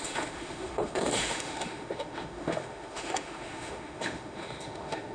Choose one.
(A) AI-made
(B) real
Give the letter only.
A